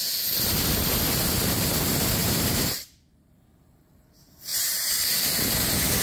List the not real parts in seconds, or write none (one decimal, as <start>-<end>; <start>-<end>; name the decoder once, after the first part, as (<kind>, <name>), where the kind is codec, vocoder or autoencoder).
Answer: 2.2-3.7 (vocoder, BigVGAN v2); 4.5-5.4